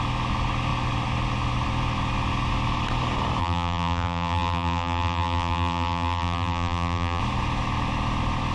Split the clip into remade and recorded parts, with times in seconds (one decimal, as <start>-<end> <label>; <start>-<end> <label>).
0.0-3.4 recorded; 3.4-7.2 remade; 7.2-8.5 recorded